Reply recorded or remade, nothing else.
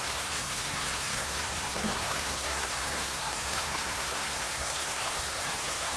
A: remade